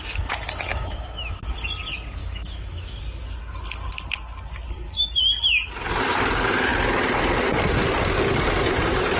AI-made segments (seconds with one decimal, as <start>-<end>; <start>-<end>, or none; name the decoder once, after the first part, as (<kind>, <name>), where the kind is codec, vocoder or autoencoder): 0.7-1.4 (autoencoder, DAC-VAE); 2.2-3.0